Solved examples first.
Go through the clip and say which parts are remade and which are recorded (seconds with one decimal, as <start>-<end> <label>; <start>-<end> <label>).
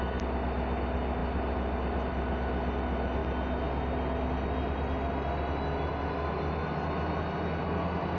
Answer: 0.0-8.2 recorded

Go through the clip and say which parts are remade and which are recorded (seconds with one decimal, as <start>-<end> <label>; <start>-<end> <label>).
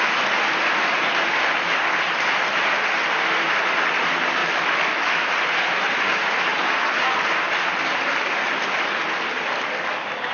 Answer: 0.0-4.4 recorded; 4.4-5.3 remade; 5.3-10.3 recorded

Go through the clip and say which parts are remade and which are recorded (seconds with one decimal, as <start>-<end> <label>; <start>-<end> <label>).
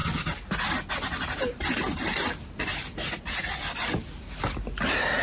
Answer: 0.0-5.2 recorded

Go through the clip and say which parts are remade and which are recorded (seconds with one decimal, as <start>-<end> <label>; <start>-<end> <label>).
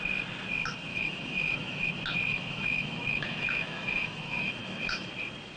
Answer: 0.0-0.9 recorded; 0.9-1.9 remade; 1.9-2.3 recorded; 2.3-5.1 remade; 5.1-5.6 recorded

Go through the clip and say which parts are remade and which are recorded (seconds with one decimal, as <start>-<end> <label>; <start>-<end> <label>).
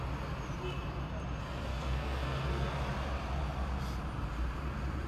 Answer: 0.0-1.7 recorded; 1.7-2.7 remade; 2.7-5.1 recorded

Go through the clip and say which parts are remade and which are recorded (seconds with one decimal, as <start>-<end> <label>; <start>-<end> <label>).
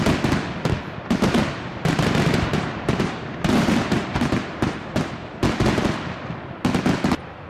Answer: 0.0-1.7 recorded; 1.7-5.4 remade; 5.4-7.5 recorded